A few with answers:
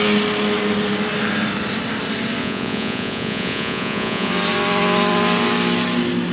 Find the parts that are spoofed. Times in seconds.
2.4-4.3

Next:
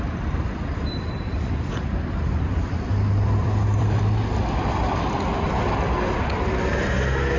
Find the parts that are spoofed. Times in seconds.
0.4-4.8

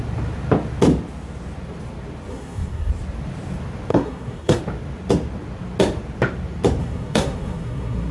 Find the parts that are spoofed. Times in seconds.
2.3-2.9; 3.9-4.6; 6.8-8.1

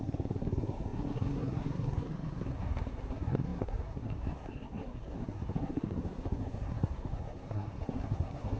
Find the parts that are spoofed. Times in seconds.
0.0-8.6

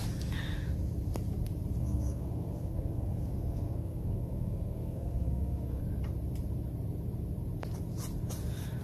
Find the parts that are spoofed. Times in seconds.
1.8-5.8